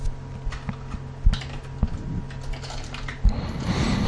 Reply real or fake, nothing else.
real